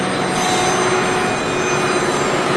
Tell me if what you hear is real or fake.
real